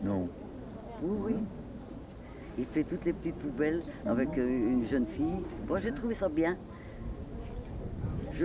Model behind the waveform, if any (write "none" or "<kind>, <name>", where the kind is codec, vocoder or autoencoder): none